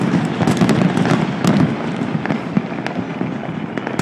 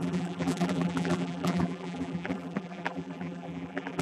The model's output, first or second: second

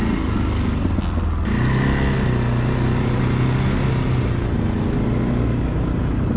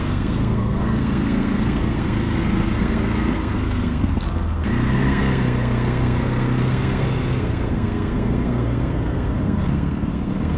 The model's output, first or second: second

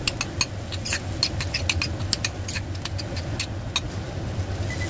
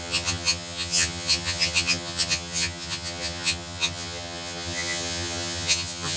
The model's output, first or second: second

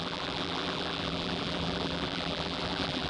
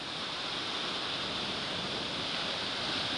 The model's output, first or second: first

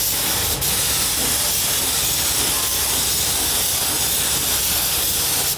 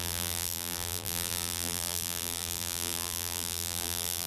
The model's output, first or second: second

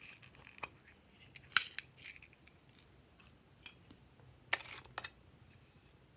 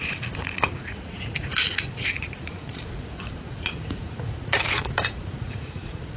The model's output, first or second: second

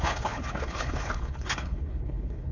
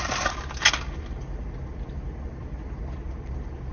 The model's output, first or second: first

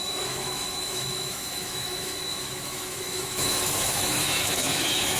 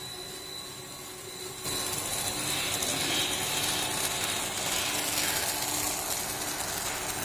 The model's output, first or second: first